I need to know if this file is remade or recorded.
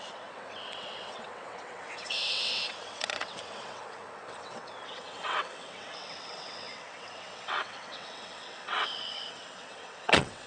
remade